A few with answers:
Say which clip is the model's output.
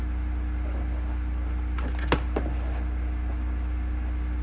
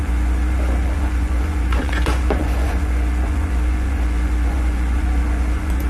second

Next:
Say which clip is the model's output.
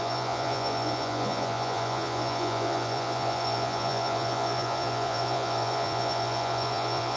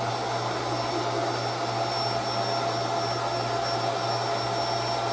first